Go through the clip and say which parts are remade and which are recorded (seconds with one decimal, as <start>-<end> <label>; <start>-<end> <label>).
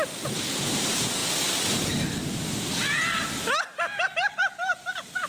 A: 0.0-5.3 recorded